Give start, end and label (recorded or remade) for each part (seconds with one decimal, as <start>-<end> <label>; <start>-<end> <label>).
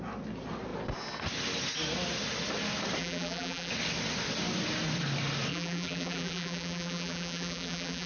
0.0-3.0 recorded; 3.0-3.7 remade; 3.7-5.5 recorded; 5.5-8.1 remade